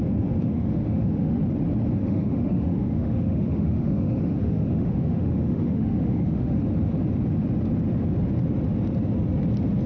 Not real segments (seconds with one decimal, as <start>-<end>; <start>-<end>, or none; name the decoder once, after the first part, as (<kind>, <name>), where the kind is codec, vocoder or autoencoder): 0.4-1.4 (autoencoder, DAC-VAE); 2.0-6.6